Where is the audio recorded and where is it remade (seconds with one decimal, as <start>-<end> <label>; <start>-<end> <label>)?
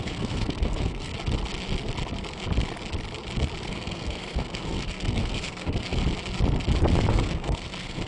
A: 0.0-1.1 remade; 1.1-3.7 recorded; 3.7-6.0 remade; 6.0-7.1 recorded; 7.1-8.1 remade